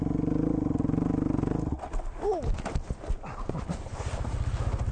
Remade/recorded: recorded